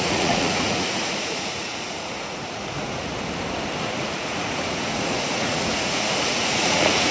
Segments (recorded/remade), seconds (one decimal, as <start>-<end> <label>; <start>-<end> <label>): 0.0-3.1 remade; 3.1-3.8 recorded; 3.8-7.1 remade

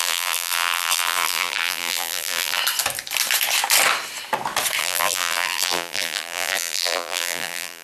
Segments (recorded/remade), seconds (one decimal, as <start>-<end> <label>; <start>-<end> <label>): 0.0-2.6 remade; 2.6-4.8 recorded; 4.8-7.8 remade